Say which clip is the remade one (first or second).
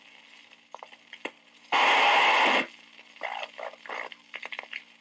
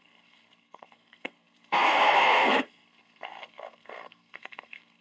second